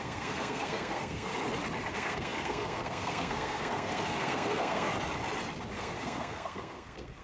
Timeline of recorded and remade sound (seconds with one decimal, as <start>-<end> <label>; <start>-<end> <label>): 0.0-1.3 remade; 1.3-1.9 recorded; 1.9-4.9 remade; 4.9-5.8 recorded; 5.8-7.2 remade